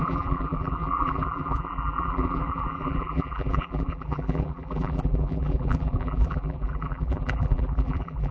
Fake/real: fake